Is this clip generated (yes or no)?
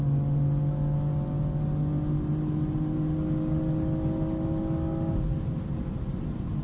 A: no